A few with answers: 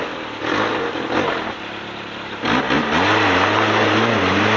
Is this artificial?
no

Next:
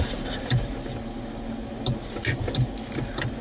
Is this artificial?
no